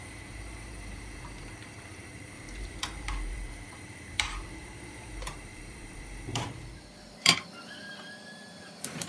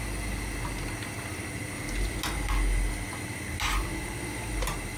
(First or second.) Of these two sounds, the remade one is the first